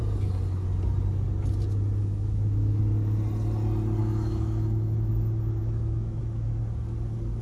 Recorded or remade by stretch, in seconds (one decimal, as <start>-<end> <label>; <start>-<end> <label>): 0.0-2.0 recorded; 2.0-2.8 remade; 2.8-4.0 recorded; 4.0-5.1 remade; 5.1-5.6 recorded; 5.6-6.2 remade; 6.2-7.4 recorded